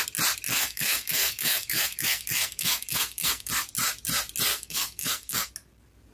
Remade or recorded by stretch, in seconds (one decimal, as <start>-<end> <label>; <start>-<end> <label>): 0.0-0.5 recorded; 0.5-3.5 remade; 3.5-4.5 recorded; 4.5-5.5 remade; 5.5-6.1 recorded